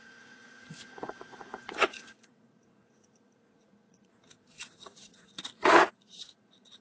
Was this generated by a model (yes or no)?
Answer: yes